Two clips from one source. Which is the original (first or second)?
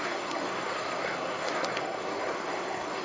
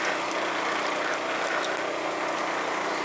second